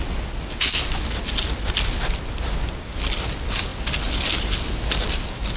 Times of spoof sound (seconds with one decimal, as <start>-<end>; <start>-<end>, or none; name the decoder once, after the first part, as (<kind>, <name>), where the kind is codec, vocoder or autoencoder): none